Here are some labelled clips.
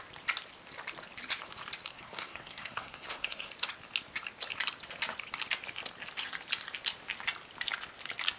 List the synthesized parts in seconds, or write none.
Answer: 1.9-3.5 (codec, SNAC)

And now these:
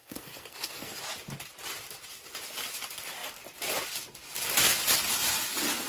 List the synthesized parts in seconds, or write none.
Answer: 0.0-1.0 (codec, SNAC)